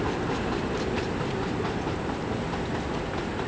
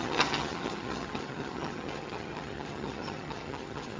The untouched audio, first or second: first